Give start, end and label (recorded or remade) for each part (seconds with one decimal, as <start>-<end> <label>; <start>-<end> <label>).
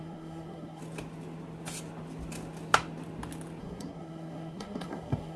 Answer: 0.0-0.8 remade; 0.8-3.6 recorded; 3.6-5.4 remade